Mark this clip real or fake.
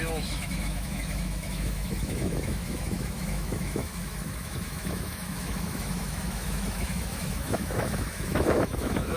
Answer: fake